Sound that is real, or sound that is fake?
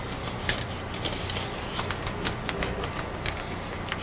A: real